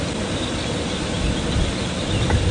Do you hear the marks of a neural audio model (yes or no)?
no